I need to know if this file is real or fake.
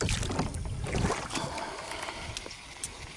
real